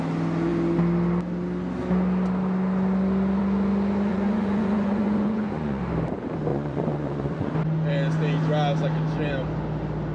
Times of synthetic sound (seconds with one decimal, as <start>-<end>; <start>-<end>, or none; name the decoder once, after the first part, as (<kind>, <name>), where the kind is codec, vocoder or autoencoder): 4.1-5.8 (vocoder, Vocos); 6.5-7.5